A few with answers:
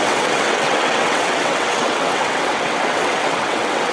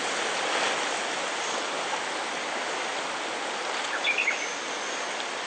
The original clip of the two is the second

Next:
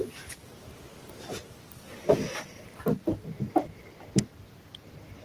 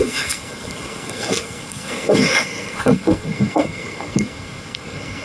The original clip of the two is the first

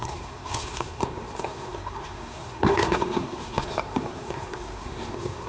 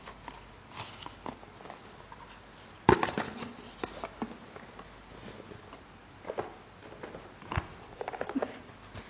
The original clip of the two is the second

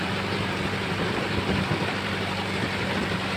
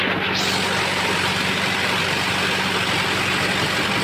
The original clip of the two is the second